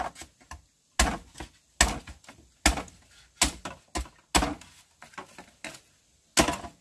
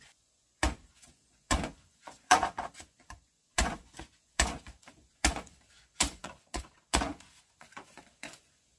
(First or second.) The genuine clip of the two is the first